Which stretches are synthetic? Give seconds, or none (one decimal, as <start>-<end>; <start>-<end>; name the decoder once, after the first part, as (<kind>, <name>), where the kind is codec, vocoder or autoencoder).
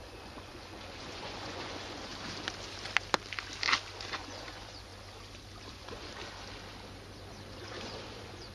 0.0-2.1 (vocoder, Vocos); 4.1-4.9; 5.7-6.2; 7.5-8.5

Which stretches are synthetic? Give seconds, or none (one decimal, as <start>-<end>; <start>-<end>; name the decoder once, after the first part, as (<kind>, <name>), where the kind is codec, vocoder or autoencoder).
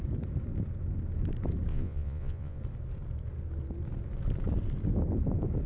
1.7-2.6 (vocoder, Vocos)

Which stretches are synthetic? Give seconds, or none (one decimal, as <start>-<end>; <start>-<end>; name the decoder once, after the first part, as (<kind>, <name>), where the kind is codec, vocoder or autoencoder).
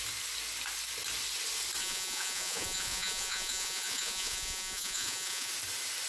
1.8-5.5 (vocoder, Vocos)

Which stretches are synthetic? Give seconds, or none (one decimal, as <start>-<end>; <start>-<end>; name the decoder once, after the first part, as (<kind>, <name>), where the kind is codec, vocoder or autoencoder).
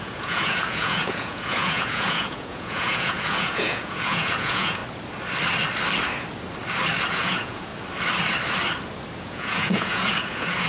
0.0-4.8 (vocoder, Vocos); 7.1-7.7; 9.2-10.7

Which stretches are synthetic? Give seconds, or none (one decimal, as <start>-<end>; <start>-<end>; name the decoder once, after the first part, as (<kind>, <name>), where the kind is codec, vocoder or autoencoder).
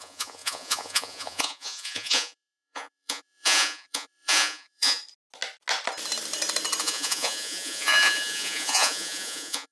0.0-5.0 (vocoder, Vocos); 6.8-9.7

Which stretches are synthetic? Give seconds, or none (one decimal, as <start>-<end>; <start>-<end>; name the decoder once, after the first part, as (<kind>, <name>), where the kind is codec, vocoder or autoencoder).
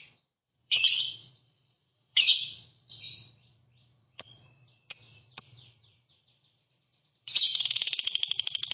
0.0-8.7 (vocoder, Vocos)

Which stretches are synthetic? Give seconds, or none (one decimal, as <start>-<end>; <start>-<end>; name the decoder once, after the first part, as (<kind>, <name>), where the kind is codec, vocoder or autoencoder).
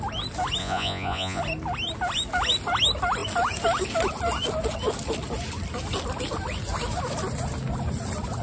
0.6-1.4 (vocoder, Vocos)